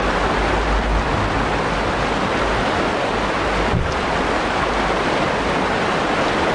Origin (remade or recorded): recorded